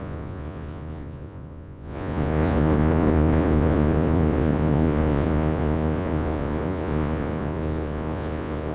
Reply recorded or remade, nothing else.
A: remade